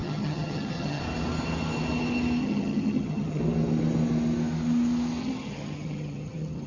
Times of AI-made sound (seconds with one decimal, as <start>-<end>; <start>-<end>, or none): 0.0-1.0; 2.4-3.4; 5.2-6.7

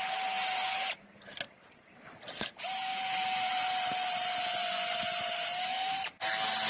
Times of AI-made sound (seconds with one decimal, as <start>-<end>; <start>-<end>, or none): none

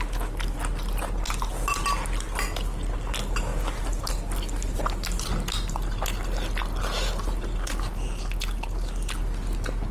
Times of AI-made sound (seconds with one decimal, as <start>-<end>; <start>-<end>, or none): none

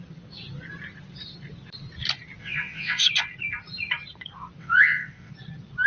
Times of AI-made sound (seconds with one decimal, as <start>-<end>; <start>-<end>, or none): 2.4-3.0; 4.6-5.3

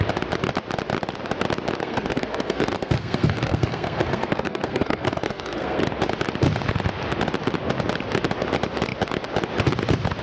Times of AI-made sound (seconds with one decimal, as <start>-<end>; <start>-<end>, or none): 1.8-5.8

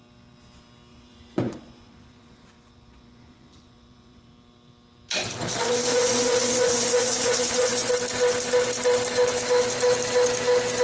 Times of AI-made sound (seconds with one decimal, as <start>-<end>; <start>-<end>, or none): 0.9-4.3; 5.9-7.9

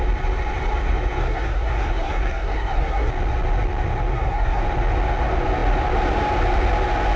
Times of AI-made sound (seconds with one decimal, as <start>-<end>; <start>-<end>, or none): 1.2-3.1; 4.1-4.6

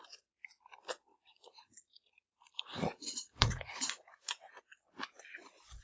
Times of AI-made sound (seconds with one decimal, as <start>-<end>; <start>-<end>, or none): 1.1-4.6